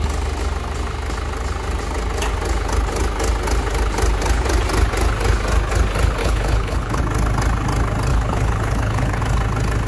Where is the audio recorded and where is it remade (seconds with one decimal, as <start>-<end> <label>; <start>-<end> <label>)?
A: 0.0-6.2 recorded; 6.2-7.0 remade; 7.0-8.1 recorded; 8.1-9.2 remade; 9.2-9.9 recorded